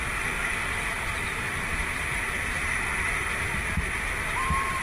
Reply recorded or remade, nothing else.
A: recorded